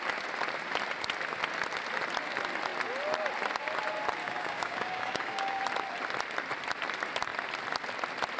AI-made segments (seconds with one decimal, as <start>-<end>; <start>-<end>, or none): 4.2-5.6